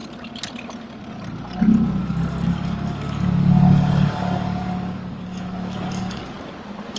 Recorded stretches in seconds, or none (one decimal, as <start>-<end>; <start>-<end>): 0.0-2.0; 6.2-7.0